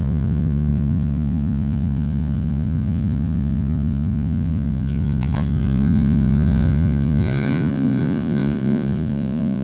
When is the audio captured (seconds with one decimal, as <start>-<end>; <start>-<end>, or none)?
none